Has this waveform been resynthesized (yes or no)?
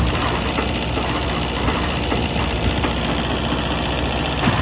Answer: no